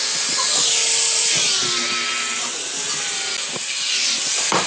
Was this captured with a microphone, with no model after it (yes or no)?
yes